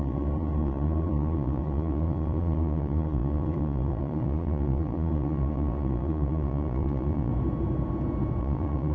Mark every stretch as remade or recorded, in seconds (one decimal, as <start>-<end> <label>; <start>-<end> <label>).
0.0-7.3 remade; 7.3-8.4 recorded; 8.4-8.9 remade